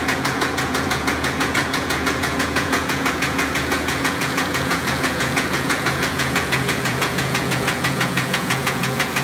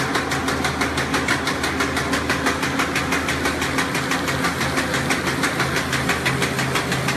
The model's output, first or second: first